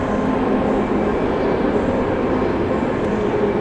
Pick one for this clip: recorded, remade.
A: recorded